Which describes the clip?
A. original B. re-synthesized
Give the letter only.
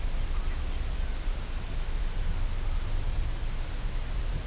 A